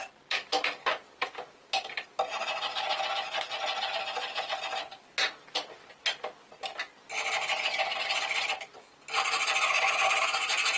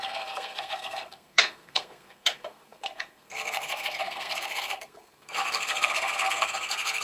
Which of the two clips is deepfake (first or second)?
second